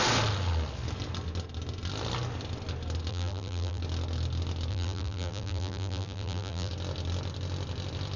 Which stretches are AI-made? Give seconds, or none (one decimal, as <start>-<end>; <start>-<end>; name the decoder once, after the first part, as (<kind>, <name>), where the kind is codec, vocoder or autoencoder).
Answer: 3.1-3.8 (vocoder, BigVGAN v2); 4.7-6.7